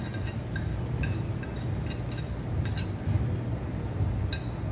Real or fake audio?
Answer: real